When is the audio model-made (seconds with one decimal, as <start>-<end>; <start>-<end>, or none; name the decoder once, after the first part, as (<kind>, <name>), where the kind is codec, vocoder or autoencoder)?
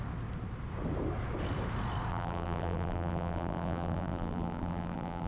2.1-5.3 (vocoder, BigVGAN v2)